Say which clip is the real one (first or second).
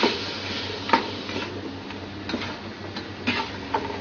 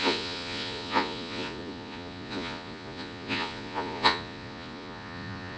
first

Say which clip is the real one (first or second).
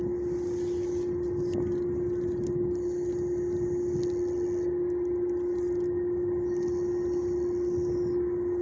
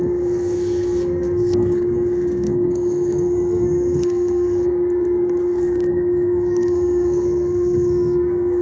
first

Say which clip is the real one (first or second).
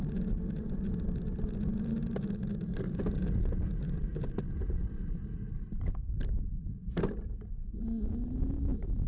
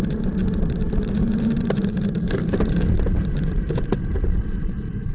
first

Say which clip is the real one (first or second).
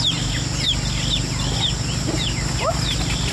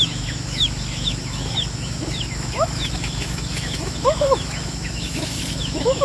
first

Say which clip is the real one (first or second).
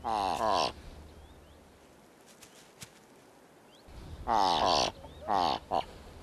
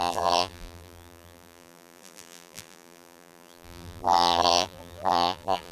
first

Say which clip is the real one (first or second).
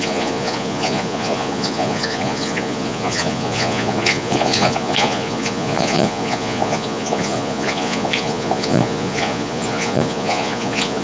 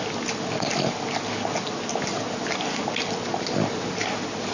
second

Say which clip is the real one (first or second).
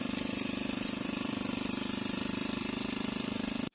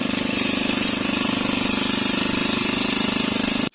second